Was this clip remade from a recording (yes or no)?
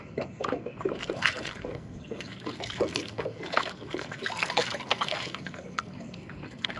yes